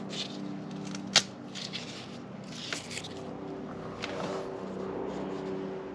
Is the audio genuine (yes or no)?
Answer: yes